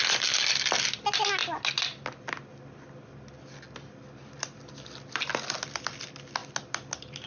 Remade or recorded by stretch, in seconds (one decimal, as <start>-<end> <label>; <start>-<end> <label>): 0.0-7.3 recorded